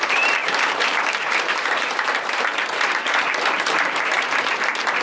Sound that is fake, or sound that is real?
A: fake